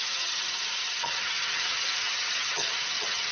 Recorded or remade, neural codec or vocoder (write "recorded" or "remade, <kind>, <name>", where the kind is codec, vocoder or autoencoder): remade, vocoder, HiFi-GAN